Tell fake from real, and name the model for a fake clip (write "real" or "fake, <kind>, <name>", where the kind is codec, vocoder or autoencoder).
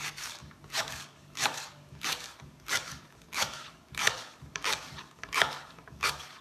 fake, codec, DAC